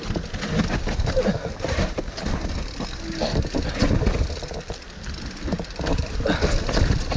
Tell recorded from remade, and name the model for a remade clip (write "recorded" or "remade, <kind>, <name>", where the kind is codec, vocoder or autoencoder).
recorded